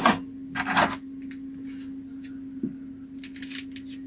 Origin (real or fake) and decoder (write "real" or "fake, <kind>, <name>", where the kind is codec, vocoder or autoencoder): real